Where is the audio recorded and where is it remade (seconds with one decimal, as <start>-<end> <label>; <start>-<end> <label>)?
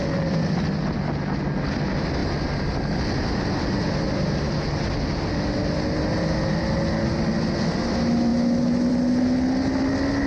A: 0.0-10.3 recorded